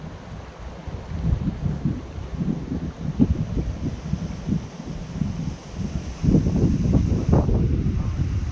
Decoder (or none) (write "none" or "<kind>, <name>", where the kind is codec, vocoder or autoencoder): none